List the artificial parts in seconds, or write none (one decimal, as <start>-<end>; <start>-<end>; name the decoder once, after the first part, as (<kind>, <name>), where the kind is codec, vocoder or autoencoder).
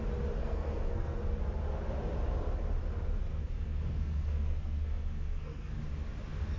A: 0.4-1.2 (codec, SNAC); 3.2-5.8